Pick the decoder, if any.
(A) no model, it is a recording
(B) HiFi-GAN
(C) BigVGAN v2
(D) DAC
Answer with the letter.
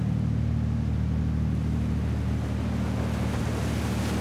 A